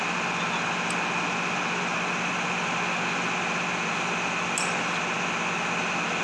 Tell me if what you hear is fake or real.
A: real